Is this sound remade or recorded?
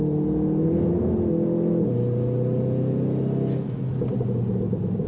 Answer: recorded